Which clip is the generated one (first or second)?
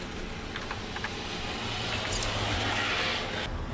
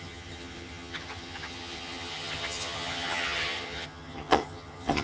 second